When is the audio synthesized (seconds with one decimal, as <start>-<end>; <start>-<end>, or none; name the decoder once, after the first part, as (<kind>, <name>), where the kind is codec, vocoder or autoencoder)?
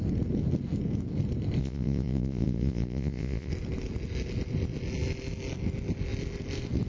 1.6-3.5 (vocoder, Vocos)